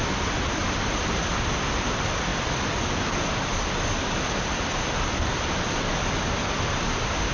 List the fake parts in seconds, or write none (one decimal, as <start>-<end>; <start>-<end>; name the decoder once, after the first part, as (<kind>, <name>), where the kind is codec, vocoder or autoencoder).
0.0-0.6 (vocoder, BigVGAN v2); 1.1-7.3